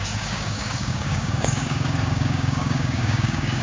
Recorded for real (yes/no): no